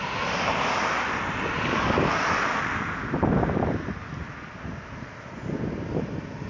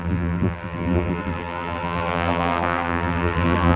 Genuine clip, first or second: first